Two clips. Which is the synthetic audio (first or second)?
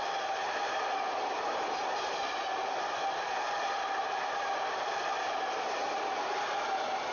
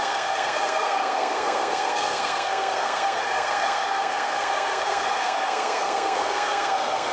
second